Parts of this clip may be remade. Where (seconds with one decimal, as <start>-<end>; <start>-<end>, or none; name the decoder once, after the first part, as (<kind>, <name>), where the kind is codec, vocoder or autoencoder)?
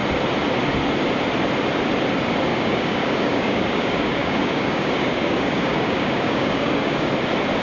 2.5-7.1 (codec, DAC)